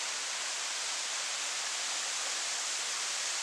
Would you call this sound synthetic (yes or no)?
no